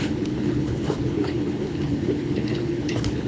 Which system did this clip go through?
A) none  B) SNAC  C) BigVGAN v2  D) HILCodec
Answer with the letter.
D